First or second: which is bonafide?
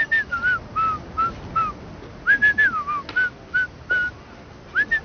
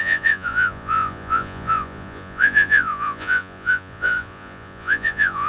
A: first